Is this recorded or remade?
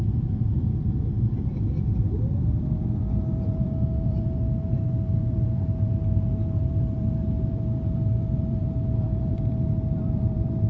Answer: remade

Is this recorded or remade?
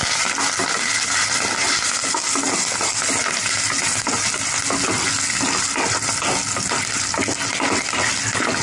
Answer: recorded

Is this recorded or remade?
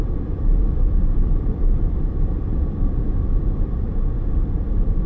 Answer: remade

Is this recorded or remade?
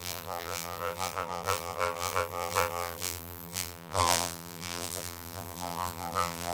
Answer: remade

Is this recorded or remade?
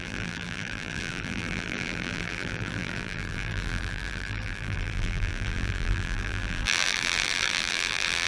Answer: remade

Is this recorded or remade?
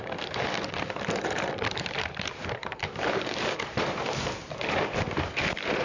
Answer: remade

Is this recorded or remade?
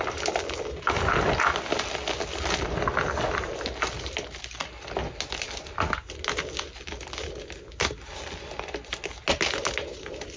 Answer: recorded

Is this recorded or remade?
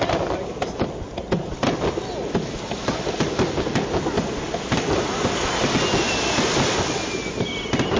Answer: recorded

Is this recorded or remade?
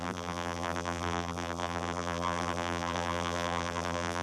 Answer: remade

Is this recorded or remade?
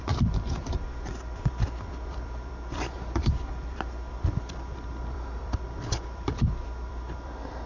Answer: remade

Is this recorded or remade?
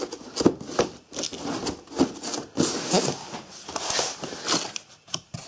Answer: recorded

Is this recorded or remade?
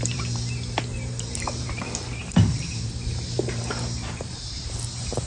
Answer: remade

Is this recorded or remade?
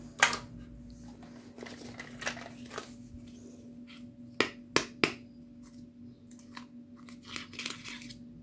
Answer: recorded